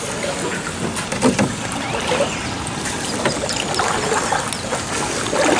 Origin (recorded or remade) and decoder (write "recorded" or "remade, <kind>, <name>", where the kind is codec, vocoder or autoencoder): recorded